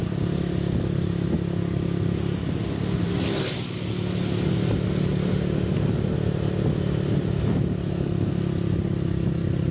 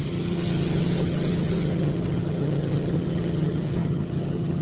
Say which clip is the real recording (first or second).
first